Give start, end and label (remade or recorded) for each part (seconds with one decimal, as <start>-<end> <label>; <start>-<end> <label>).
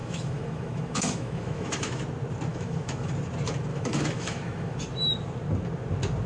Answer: 0.0-2.0 remade; 2.0-2.5 recorded; 2.5-3.1 remade; 3.1-3.7 recorded; 3.7-4.8 remade; 4.8-6.3 recorded